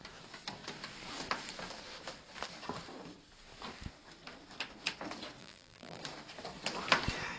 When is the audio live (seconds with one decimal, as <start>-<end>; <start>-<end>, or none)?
0.0-5.4; 6.0-7.4